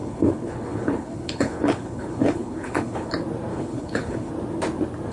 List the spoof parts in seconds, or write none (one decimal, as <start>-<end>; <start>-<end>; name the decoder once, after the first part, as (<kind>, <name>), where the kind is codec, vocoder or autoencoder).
0.0-3.1 (codec, HILCodec); 3.5-4.3